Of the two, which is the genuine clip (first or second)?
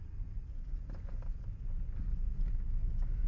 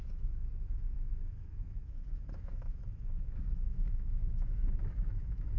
first